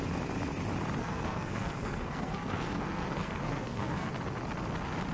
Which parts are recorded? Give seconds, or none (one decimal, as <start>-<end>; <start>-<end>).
0.0-1.0; 4.1-5.1